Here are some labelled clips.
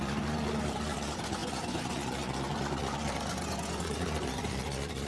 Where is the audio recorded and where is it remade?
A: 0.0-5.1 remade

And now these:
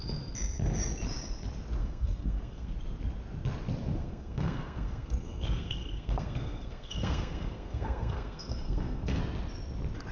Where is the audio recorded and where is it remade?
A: 0.0-1.8 recorded; 1.8-2.7 remade; 2.7-4.0 recorded; 4.0-9.2 remade; 9.2-10.1 recorded